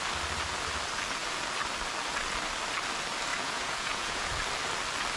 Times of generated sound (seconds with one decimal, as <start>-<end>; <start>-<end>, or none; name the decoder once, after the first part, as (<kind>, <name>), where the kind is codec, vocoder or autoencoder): 3.3-4.3 (vocoder, Vocos)